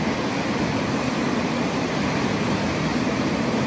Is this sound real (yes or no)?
yes